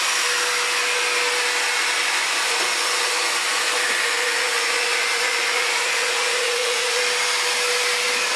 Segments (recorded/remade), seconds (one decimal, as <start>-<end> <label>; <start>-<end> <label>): 0.0-2.0 recorded; 2.0-7.0 remade; 7.0-8.4 recorded